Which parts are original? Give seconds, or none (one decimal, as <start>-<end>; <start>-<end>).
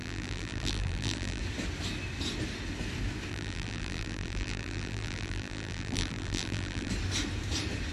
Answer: 1.4-3.3; 6.9-7.9